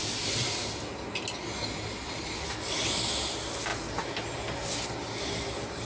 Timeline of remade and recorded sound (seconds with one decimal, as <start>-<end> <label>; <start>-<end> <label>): 0.0-5.8 recorded